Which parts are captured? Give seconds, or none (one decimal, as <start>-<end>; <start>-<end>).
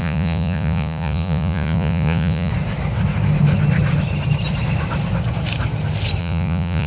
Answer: 2.5-6.2